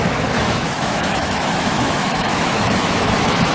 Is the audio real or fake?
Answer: fake